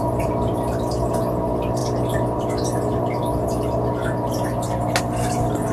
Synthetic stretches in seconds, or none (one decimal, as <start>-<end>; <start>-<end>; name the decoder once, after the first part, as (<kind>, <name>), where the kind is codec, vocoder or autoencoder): none

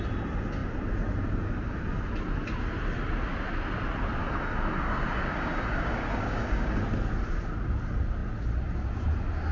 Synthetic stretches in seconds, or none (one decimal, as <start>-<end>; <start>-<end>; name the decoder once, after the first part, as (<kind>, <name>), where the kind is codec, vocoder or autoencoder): 4.2-6.8 (codec, DAC)

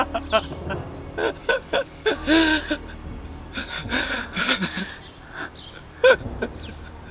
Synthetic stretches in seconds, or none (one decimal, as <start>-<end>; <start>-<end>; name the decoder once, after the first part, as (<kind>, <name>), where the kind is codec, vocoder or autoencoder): 1.4-2.1 (codec, DAC); 3.6-4.9